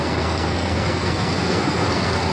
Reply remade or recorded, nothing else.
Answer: remade